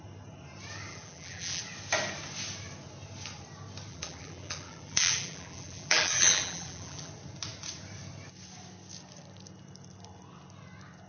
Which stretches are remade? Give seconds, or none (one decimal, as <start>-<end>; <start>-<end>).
0.9-1.6; 3.9-7.1